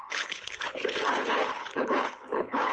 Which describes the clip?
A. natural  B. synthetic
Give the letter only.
B